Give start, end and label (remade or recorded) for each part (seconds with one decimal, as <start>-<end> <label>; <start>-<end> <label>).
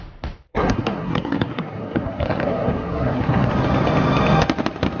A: 0.0-0.5 recorded; 0.5-3.5 remade; 3.5-5.0 recorded